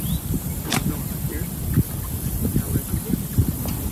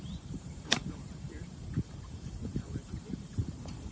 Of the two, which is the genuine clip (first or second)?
first